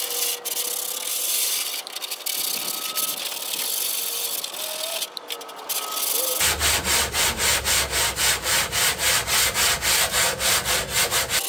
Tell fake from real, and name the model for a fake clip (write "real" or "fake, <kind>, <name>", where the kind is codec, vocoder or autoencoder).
real